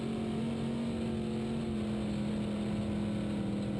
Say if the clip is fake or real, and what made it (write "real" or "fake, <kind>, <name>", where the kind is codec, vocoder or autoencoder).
real